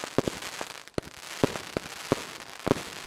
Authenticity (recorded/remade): recorded